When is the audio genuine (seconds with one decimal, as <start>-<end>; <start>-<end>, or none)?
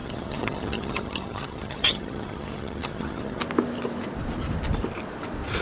3.4-5.6